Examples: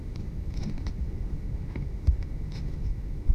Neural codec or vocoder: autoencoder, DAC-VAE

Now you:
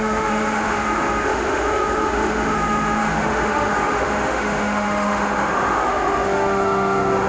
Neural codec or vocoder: autoencoder, DAC-VAE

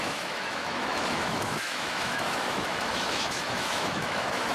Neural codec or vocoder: autoencoder, DAC-VAE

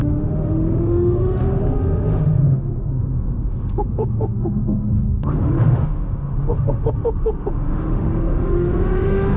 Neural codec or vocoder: autoencoder, DAC-VAE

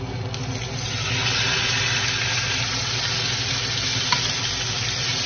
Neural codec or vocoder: none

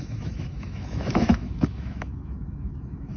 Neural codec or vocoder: autoencoder, DAC-VAE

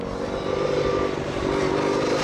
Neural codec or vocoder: none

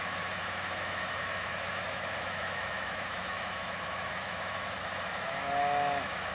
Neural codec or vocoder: autoencoder, DAC-VAE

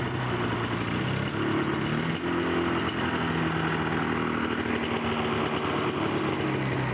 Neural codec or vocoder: none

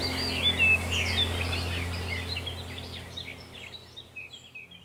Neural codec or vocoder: none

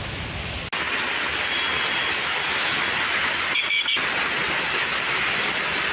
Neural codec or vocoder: none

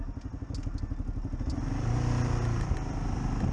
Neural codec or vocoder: none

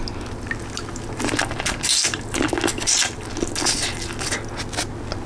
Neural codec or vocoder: none